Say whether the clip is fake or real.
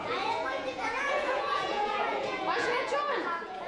fake